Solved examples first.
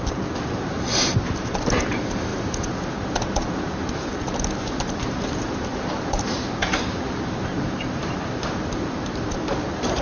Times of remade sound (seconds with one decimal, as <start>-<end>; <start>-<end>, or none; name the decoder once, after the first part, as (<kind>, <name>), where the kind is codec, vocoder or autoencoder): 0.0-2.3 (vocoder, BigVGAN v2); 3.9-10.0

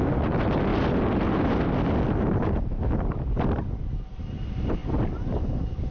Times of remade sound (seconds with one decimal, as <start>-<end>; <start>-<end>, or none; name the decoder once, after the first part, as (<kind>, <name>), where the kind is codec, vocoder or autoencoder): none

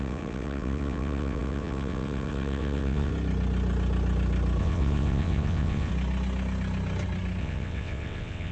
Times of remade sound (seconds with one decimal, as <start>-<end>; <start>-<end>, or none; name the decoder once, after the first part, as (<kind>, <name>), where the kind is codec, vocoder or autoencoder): 0.0-3.1 (vocoder, WaveNeXt); 4.6-5.9; 7.4-8.5